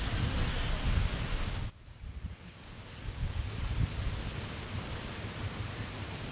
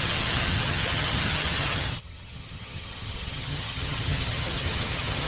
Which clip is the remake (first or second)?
second